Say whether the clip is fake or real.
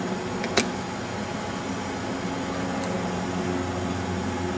real